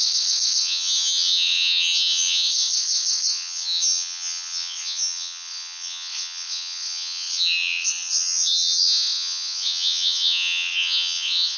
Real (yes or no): no